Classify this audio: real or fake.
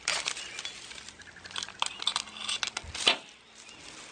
real